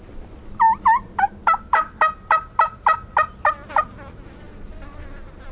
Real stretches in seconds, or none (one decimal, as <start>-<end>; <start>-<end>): 0.0-5.5